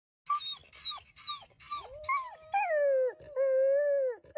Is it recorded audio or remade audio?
recorded